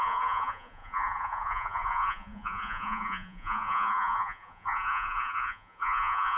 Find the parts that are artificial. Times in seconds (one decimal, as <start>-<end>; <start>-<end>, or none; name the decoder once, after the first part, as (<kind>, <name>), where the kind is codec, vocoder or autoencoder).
0.0-6.4 (vocoder, Vocos)